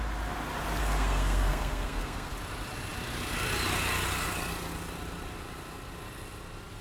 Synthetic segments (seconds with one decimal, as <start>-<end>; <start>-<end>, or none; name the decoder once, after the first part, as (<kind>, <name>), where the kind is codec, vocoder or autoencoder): 0.8-2.3 (codec, SNAC)